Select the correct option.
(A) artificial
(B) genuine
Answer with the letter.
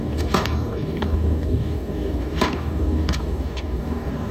A